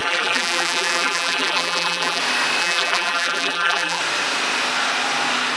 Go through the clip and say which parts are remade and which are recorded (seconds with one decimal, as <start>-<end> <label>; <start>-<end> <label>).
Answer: 0.0-2.2 remade; 2.2-2.6 recorded; 2.6-4.0 remade; 4.0-5.6 recorded